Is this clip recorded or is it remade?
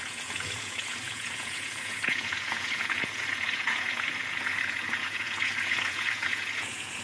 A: remade